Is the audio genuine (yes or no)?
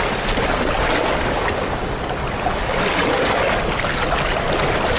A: yes